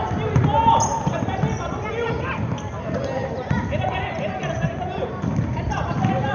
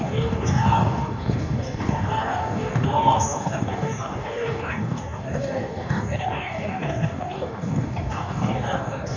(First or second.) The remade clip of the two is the second